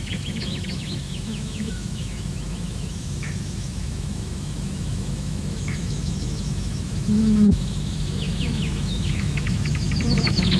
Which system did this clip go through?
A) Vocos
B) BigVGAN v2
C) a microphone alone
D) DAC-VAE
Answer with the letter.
D